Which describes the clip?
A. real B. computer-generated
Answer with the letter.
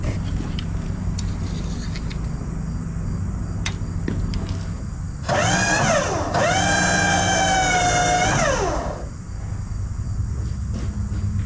A